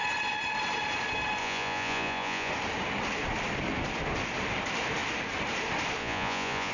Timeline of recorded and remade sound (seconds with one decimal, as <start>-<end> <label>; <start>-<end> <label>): 0.0-1.4 recorded; 1.4-2.5 remade; 2.5-6.0 recorded; 6.0-6.7 remade